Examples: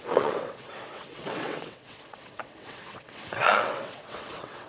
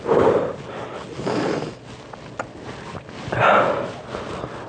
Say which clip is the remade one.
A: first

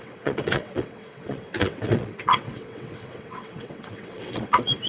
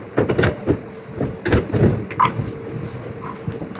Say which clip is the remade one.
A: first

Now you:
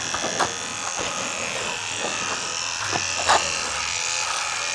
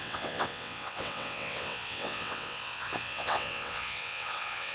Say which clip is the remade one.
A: second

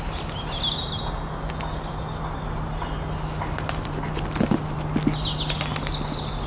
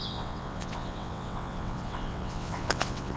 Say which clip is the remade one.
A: second